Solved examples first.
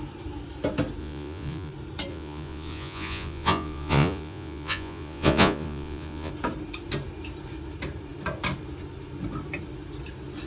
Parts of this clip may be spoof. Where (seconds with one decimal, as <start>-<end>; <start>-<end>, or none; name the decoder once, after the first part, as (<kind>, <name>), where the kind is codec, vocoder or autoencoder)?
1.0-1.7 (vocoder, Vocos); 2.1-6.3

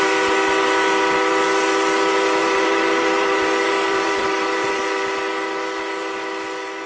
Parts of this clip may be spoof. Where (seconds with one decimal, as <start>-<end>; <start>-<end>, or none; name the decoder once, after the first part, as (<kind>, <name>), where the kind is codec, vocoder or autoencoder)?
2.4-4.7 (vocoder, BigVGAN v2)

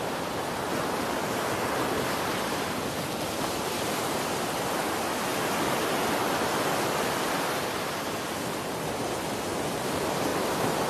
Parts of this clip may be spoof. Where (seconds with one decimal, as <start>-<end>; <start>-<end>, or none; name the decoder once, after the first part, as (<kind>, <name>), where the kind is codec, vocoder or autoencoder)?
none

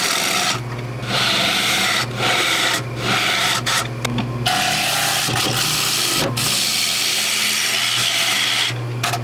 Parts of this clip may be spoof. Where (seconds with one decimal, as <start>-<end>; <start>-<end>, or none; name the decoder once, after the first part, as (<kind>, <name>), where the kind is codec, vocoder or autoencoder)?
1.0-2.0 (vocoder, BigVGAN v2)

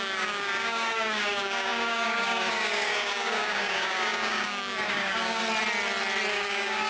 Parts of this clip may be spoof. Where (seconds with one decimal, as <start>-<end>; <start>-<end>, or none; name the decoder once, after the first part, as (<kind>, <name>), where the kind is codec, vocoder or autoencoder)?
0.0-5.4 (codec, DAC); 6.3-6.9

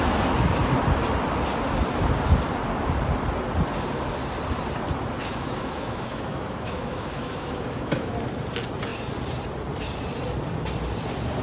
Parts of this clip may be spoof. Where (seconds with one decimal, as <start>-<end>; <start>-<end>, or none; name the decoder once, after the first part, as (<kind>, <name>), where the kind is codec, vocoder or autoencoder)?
5.2-8.1 (autoencoder, DAC-VAE)